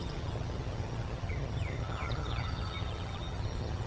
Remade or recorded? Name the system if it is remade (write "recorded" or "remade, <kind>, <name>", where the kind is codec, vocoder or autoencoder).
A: remade, vocoder, HiFi-GAN